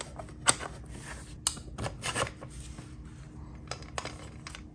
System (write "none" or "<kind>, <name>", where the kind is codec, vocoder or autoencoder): none